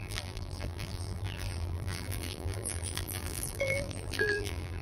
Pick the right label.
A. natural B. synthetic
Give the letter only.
B